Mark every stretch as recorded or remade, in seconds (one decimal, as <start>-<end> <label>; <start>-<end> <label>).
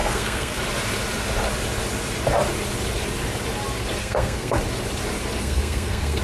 0.0-0.6 remade; 0.6-4.0 recorded; 4.0-4.6 remade; 4.6-5.4 recorded; 5.4-6.2 remade